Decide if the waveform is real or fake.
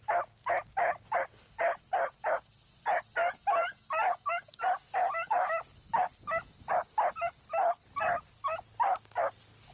real